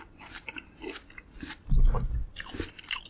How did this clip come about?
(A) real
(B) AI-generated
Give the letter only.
A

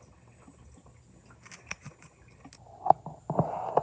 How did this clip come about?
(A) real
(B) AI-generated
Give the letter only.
A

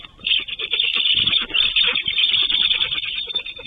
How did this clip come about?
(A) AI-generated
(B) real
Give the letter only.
B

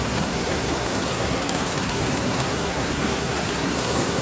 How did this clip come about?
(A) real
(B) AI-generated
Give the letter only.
B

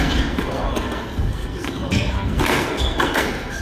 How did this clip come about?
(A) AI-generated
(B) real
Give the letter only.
A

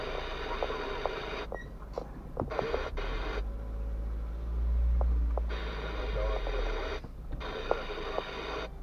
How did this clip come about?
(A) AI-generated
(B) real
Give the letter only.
B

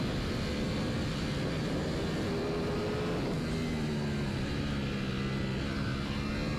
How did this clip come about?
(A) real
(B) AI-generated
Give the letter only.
A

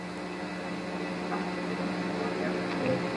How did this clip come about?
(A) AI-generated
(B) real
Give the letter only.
B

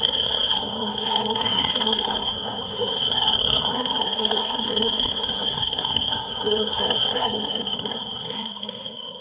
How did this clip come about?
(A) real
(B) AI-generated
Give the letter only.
B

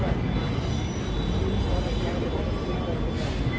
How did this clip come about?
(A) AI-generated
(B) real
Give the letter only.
B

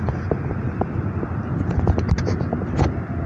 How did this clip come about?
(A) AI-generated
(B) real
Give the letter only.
B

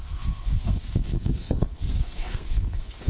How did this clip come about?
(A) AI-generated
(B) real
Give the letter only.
A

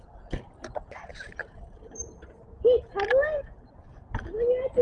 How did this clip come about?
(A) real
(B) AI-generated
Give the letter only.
A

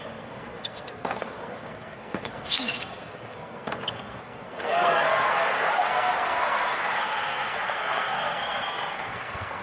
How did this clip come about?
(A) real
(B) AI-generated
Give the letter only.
B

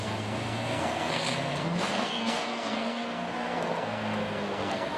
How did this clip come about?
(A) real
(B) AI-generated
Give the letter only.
B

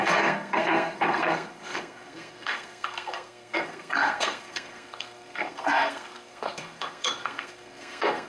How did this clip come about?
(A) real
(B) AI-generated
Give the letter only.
B